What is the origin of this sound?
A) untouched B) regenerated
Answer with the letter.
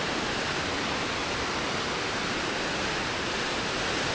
A